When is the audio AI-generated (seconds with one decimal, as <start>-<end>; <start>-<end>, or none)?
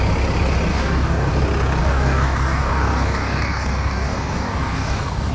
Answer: 0.7-1.3; 1.8-5.3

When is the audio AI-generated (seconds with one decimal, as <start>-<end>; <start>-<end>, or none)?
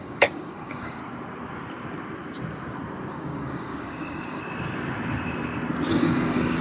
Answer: 0.0-1.0; 3.1-4.4; 5.9-6.6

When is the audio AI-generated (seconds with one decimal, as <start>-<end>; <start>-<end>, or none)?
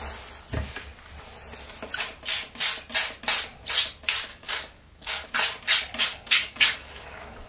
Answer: 4.3-5.3; 6.1-7.5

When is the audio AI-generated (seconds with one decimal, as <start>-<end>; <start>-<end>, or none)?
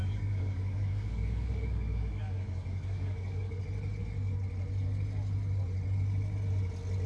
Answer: 0.0-3.6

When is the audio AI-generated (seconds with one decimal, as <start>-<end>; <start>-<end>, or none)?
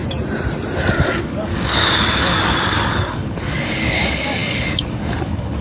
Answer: 0.9-5.6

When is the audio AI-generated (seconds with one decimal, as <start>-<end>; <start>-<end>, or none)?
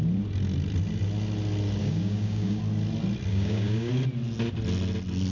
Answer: 1.8-2.6; 3.3-3.9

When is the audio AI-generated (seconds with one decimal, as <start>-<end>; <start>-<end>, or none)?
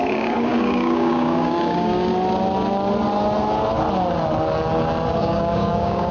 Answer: 0.0-2.1; 5.2-6.1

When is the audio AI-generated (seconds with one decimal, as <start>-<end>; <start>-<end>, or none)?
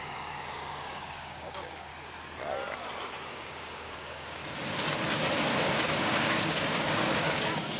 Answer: 0.0-1.9; 3.3-4.4; 5.7-7.8